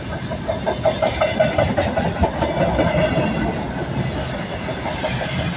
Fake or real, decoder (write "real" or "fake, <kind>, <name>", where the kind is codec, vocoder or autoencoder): real